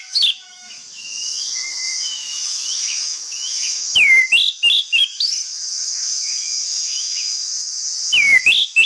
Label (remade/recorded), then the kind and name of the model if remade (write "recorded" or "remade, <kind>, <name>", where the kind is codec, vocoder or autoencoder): remade, autoencoder, DAC-VAE